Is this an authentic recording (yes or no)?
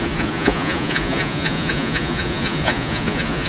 no